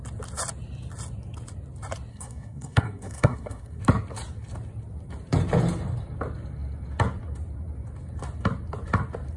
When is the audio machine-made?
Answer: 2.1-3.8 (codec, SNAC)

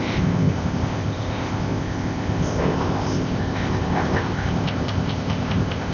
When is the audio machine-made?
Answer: 0.0-5.9 (codec, ZipCodec)

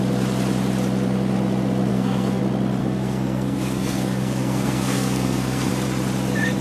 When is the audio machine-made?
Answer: 1.9-2.4 (codec, SNAC); 2.8-5.7

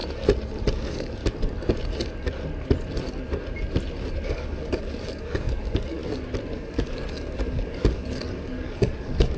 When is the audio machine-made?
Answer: 0.7-1.2 (codec, DAC); 4.1-6.0; 6.6-9.4